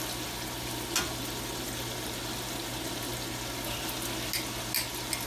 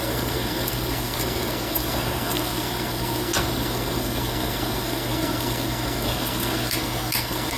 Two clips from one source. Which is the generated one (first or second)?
second